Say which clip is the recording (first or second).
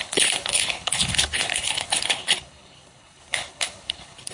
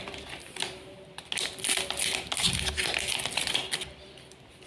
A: second